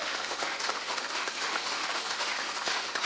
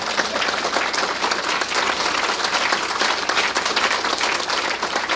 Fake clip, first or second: first